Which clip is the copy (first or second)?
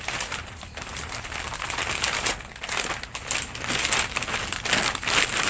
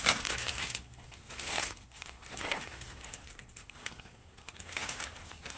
second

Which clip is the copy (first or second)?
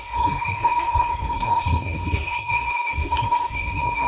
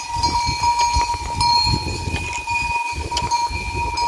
first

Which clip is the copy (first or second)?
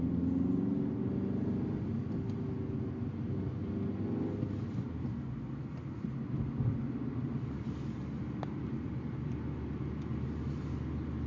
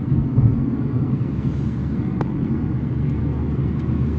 second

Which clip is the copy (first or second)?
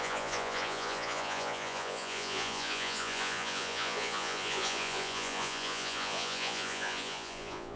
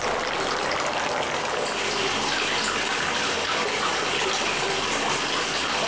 first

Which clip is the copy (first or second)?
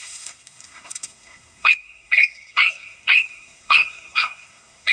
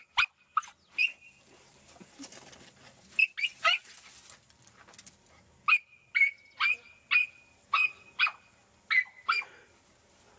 first